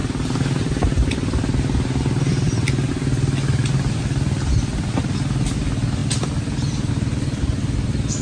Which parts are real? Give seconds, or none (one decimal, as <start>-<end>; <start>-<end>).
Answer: 0.0-6.0; 6.9-8.2